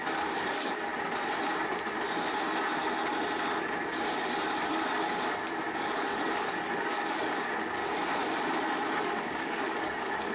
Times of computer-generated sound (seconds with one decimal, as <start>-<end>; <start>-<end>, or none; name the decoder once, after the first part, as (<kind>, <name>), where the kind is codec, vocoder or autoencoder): 0.0-0.9 (codec, DAC); 5.8-7.8; 9.0-10.3

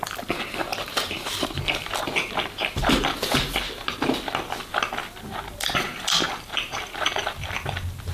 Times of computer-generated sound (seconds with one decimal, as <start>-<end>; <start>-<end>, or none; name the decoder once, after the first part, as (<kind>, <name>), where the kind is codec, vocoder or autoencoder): 0.7-1.6 (vocoder, BigVGAN v2)

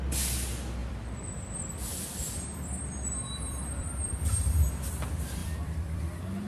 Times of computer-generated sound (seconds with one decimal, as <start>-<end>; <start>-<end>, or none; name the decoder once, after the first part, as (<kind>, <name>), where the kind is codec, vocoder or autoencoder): 0.8-4.7 (vocoder, BigVGAN v2); 5.4-6.0

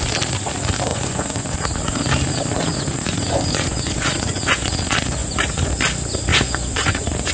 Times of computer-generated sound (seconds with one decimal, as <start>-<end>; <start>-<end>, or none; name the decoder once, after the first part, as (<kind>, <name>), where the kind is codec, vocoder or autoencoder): 0.9-1.6 (vocoder, Vocos); 2.7-4.7; 5.2-5.7; 6.3-7.3

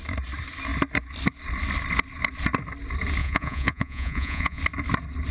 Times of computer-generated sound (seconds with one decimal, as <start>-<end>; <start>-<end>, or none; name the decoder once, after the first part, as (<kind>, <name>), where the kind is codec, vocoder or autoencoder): 3.2-4.6 (vocoder, Vocos)

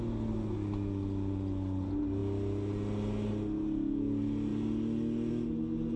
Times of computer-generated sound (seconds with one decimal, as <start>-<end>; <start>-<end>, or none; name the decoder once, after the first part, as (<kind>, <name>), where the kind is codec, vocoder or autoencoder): none

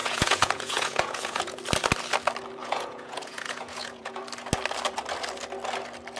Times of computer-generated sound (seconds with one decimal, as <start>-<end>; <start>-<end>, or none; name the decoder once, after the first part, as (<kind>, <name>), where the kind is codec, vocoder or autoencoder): 0.0-1.6 (vocoder, Vocos); 2.6-4.2